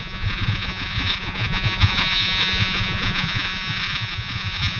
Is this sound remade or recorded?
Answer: remade